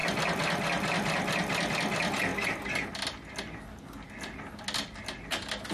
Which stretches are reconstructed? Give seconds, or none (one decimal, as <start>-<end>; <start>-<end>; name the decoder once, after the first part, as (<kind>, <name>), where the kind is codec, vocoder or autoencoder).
none